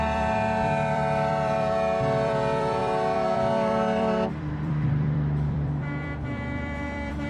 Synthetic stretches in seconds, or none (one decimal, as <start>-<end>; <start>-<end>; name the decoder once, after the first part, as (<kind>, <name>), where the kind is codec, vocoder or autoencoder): 0.0-7.3 (vocoder, BigVGAN v2)